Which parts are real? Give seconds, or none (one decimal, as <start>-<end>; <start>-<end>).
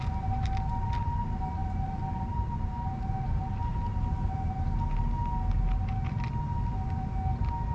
0.0-7.7